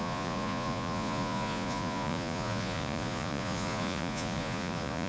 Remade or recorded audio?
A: remade